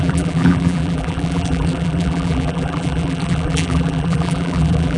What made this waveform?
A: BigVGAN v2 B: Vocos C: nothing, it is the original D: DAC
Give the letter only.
A